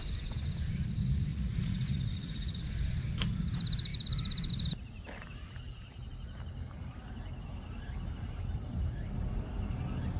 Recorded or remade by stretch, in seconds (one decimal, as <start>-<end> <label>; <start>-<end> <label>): 0.0-1.3 recorded; 1.3-2.6 remade; 2.6-10.2 recorded